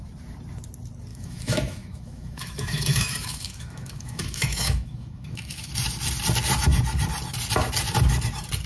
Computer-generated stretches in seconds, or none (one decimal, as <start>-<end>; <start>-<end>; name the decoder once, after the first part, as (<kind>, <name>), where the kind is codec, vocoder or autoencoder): 1.1-5.7 (autoencoder, DAC-VAE)